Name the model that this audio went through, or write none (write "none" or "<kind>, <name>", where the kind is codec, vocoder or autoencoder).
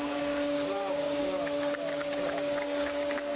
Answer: codec, DAC